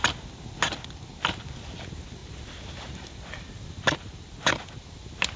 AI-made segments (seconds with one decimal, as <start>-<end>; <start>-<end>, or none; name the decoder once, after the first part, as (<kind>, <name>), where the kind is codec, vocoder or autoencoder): none